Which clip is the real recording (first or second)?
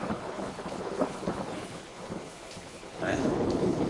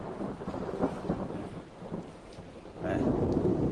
second